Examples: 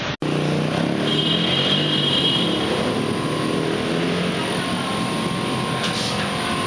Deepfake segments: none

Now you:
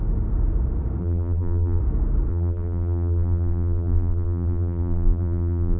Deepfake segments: 1.0-1.8 (vocoder, BigVGAN v2); 2.3-5.8

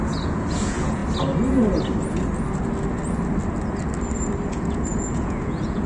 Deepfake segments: 0.0-1.0 (vocoder, Vocos); 4.5-5.9

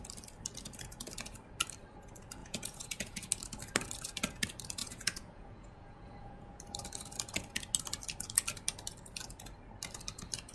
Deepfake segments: 2.4-3.3 (vocoder, Vocos); 4.8-6.6